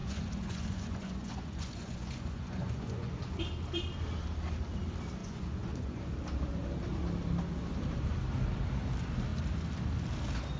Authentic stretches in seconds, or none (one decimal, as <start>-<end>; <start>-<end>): 3.2-5.2; 6.0-10.6